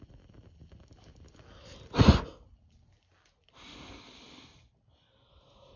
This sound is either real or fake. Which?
real